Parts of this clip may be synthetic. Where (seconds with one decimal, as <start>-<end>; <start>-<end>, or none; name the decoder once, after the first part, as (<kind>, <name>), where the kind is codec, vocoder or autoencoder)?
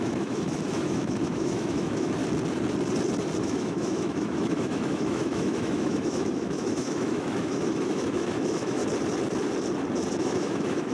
0.0-2.2 (autoencoder, DAC-VAE); 3.4-8.8; 10.2-10.9